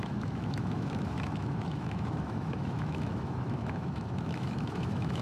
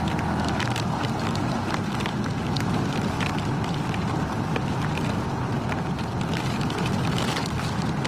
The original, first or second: second